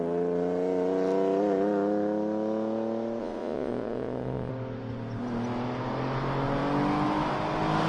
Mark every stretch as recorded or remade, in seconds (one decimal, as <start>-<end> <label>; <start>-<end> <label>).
0.0-3.2 recorded; 3.2-4.5 remade; 4.5-7.9 recorded